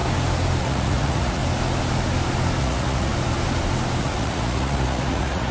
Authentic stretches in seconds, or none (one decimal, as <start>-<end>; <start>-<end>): 0.0-0.6; 1.4-2.6; 3.1-4.0